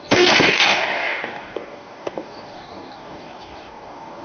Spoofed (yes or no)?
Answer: yes